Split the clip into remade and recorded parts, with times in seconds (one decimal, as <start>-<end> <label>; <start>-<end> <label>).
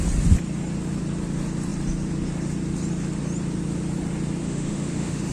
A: 0.0-4.4 recorded; 4.4-5.3 remade